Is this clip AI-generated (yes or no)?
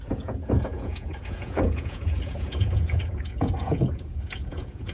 yes